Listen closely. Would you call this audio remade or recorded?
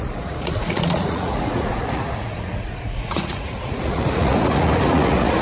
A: remade